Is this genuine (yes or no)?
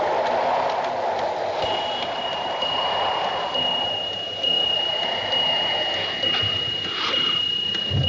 yes